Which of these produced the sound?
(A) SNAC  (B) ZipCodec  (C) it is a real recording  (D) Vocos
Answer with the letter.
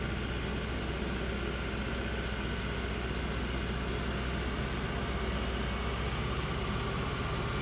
C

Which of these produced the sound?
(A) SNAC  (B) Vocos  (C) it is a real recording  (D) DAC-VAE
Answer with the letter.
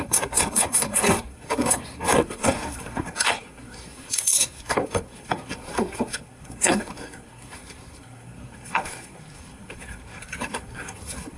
A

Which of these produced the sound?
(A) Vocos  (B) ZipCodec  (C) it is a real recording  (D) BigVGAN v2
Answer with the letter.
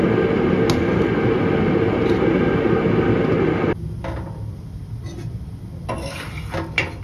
C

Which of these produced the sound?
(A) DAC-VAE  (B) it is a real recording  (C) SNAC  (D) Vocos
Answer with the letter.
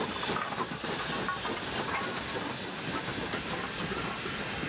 B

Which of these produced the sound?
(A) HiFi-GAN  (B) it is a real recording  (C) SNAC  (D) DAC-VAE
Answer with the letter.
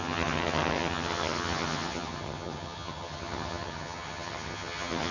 A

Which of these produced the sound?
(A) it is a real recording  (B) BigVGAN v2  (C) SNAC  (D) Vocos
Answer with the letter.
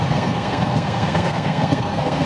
C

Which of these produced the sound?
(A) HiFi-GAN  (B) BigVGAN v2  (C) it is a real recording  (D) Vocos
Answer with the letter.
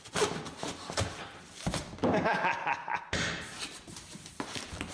B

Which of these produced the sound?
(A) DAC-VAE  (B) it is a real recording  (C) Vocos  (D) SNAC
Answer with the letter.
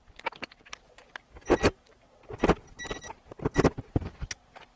B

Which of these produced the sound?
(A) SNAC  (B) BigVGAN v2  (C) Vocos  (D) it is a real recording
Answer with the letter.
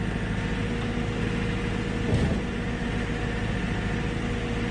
D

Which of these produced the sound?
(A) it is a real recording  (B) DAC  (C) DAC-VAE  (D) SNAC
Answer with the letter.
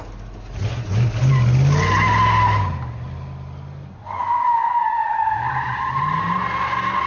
A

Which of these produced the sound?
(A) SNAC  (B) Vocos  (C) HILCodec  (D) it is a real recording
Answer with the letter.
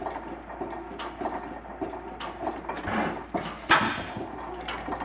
D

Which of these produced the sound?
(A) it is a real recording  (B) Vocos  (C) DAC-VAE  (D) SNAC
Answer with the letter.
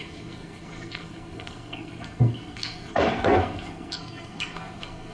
D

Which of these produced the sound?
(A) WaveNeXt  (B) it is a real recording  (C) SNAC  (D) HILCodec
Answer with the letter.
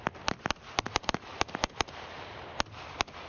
B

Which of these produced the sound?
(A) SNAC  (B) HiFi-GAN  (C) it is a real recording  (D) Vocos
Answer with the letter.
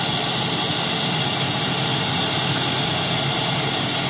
C